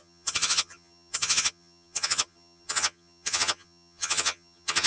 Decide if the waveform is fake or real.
fake